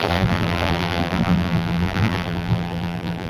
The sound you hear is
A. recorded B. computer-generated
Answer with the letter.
B